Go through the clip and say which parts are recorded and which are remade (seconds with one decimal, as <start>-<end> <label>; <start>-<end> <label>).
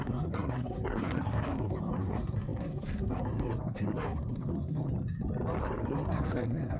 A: 0.0-4.9 remade; 4.9-5.6 recorded; 5.6-6.8 remade